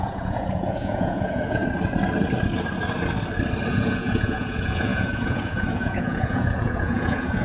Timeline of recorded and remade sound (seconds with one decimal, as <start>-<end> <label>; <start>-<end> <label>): 0.0-1.6 remade; 1.6-3.7 recorded; 3.7-7.4 remade